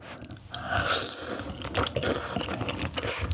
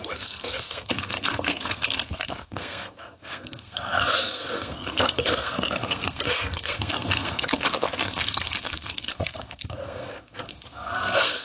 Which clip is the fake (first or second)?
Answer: second